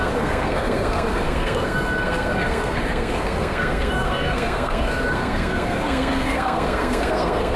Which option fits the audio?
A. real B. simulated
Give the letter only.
B